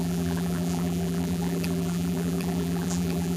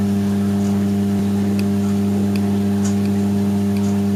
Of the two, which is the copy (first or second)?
first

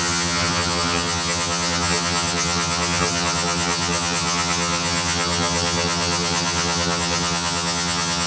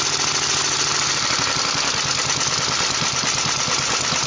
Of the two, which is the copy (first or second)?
first